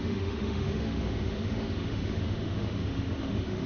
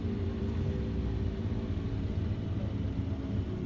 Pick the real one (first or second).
second